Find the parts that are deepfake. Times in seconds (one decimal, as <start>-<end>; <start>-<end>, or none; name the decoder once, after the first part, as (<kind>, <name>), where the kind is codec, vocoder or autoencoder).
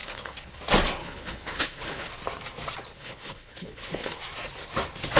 0.0-0.6 (codec, HILCodec); 1.0-2.1; 2.9-4.2